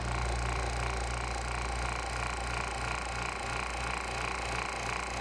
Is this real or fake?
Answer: real